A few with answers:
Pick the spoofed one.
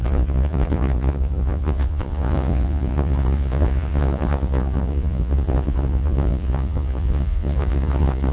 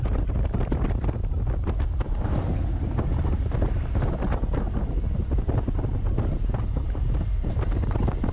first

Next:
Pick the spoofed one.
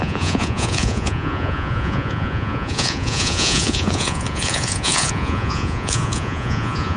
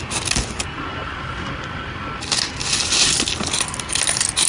first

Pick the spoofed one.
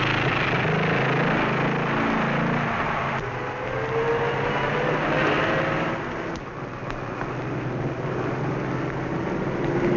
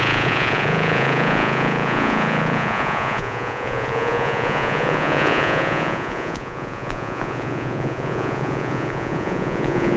second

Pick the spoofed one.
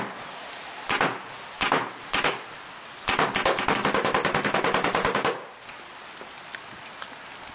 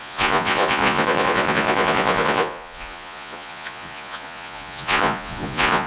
second